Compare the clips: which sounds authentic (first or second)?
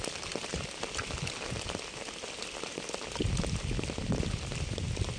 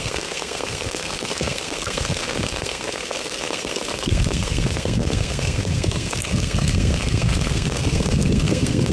first